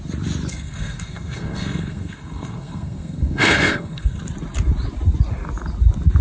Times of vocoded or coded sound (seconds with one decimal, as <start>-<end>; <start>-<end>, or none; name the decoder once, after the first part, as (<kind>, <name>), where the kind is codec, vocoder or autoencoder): 0.5-4.2 (codec, SNAC)